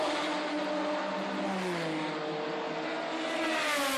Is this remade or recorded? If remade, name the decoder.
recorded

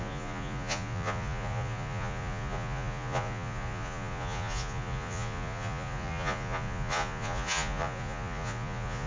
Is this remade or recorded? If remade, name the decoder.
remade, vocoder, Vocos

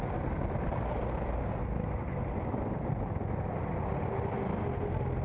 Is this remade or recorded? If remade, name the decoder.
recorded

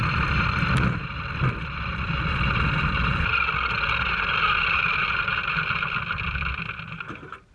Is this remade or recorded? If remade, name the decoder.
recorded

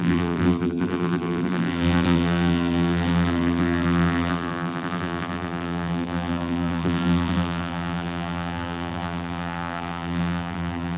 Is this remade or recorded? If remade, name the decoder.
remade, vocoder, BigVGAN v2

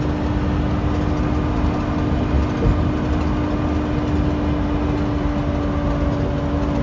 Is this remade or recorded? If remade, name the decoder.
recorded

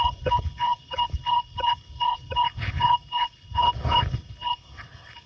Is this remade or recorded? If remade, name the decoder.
remade, codec, HILCodec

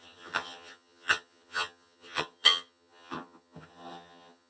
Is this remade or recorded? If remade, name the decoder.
remade, vocoder, HiFi-GAN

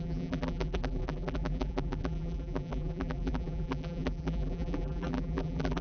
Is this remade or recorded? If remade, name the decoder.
remade, vocoder, BigVGAN v2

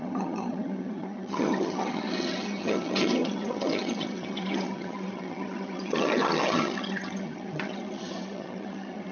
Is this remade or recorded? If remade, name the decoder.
remade, vocoder, HiFi-GAN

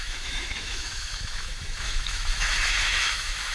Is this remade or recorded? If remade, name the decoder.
remade, autoencoder, DAC-VAE